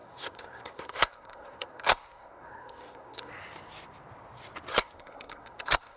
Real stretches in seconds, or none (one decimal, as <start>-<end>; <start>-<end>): 3.3-4.7